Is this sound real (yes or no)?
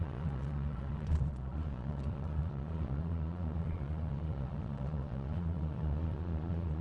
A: no